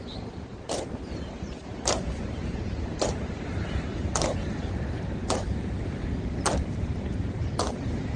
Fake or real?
fake